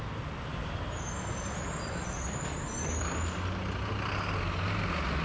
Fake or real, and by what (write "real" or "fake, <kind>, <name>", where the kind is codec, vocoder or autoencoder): real